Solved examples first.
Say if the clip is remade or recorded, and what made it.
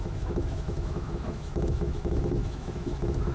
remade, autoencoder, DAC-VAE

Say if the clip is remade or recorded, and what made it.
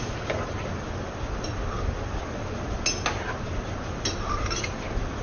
recorded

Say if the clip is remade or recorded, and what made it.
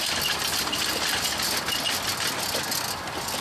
recorded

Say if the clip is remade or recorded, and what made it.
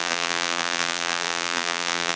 remade, vocoder, BigVGAN v2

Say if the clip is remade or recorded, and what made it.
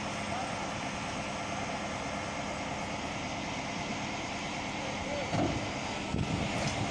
recorded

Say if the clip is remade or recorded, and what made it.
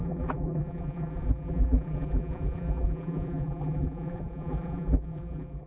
remade, vocoder, BigVGAN v2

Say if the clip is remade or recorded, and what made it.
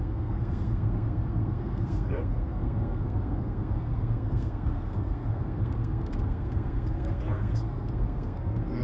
remade, codec, SNAC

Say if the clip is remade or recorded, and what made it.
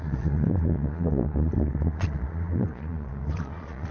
remade, vocoder, Vocos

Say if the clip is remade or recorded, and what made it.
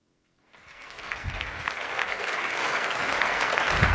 remade, codec, SNAC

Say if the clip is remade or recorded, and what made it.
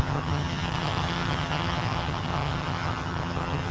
remade, vocoder, HiFi-GAN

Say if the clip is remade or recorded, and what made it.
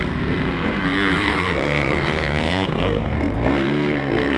remade, codec, SNAC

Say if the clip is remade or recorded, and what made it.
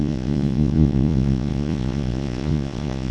remade, vocoder, Vocos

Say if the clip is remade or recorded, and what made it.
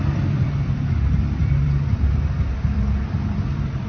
remade, vocoder, BigVGAN v2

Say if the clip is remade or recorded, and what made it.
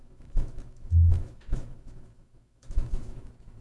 remade, autoencoder, DAC-VAE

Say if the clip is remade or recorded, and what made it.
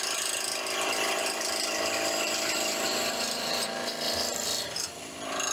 remade, vocoder, BigVGAN v2